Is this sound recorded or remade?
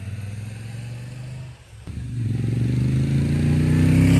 recorded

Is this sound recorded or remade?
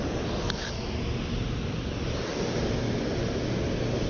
recorded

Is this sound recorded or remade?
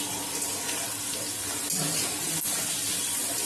recorded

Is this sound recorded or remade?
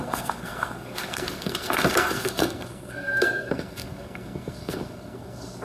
remade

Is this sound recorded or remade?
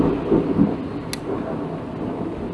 recorded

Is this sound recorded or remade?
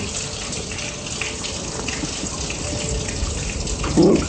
recorded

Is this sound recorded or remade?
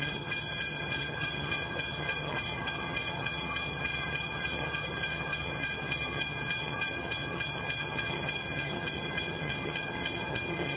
remade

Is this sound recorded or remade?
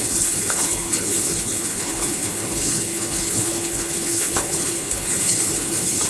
remade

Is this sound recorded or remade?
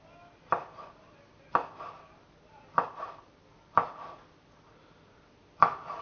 recorded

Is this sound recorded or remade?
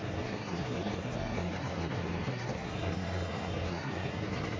remade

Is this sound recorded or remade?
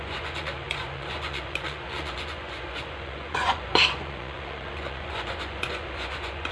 remade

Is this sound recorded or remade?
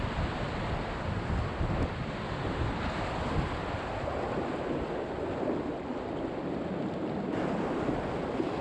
recorded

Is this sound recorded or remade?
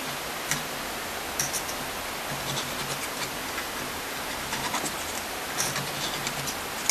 recorded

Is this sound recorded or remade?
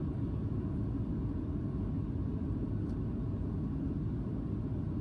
recorded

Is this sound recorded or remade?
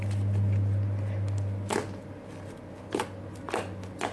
recorded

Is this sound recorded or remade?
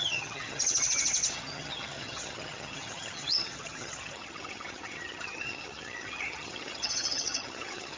remade